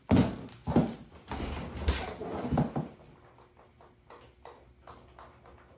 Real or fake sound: real